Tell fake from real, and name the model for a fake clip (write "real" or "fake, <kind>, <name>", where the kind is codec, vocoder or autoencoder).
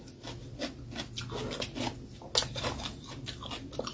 real